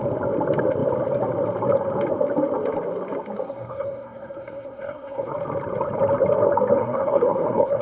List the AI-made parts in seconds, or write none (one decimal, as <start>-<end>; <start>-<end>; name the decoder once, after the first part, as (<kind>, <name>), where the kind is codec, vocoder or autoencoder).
3.4-5.3 (codec, SNAC); 6.8-7.8